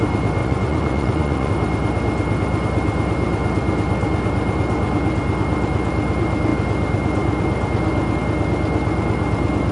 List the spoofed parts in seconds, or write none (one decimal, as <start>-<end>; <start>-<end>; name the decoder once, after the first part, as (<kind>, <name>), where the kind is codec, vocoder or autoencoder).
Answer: 0.4-1.5 (vocoder, Vocos)